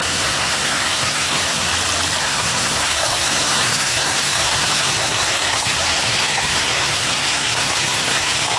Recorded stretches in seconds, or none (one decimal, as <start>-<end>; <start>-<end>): 1.7-2.2